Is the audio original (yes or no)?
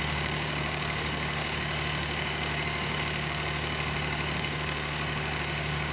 no